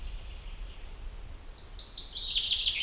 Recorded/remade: recorded